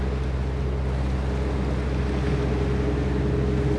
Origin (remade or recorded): recorded